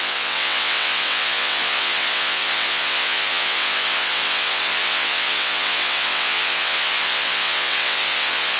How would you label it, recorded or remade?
remade